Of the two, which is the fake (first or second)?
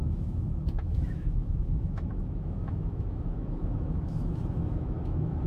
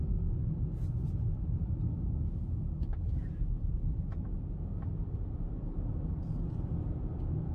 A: first